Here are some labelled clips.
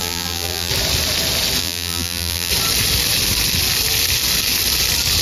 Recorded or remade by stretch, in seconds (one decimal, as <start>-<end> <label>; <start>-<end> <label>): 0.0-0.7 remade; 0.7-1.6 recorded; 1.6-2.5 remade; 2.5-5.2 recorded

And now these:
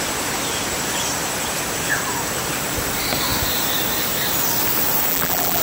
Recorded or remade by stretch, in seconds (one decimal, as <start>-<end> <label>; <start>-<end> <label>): 0.0-5.1 recorded; 5.1-5.6 remade

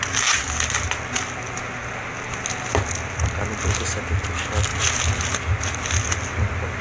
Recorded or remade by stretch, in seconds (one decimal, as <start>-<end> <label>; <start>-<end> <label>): 0.0-6.8 recorded